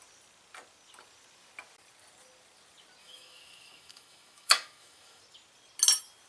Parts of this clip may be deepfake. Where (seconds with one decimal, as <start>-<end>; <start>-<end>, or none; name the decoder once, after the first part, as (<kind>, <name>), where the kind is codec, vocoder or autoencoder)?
3.0-5.2 (autoencoder, DAC-VAE)